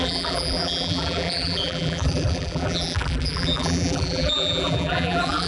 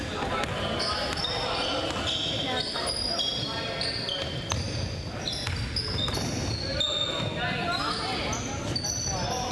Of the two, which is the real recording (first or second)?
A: second